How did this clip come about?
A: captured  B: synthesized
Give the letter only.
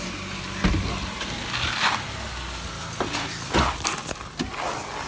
A